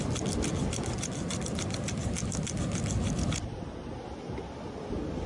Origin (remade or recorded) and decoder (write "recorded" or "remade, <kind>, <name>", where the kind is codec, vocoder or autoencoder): recorded